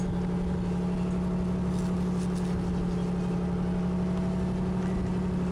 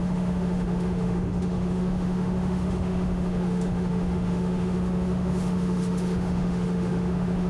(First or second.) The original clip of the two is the first